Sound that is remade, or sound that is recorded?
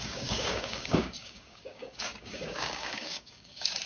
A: remade